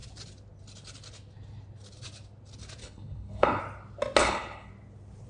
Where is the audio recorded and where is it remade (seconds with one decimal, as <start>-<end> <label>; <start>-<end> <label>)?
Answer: 0.0-2.8 recorded; 2.8-3.6 remade; 3.6-4.2 recorded; 4.2-4.7 remade; 4.7-5.3 recorded